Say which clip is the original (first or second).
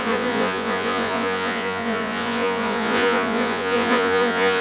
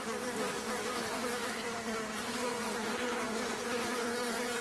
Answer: second